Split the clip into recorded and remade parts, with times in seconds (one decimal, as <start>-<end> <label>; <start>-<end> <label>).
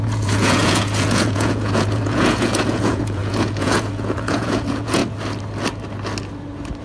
0.0-5.0 remade; 5.0-6.8 recorded